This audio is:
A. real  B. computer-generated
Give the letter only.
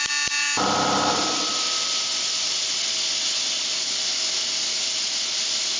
A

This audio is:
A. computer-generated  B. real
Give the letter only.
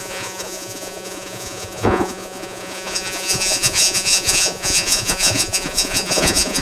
A